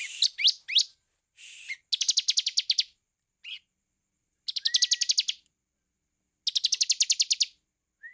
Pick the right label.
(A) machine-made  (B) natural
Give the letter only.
B